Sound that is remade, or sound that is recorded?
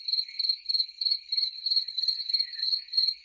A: remade